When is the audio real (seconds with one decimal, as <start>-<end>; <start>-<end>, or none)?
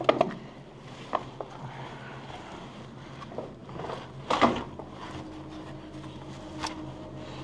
0.0-7.4